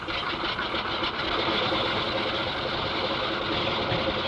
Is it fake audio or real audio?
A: real